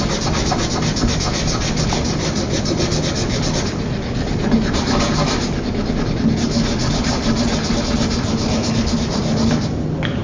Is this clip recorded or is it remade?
recorded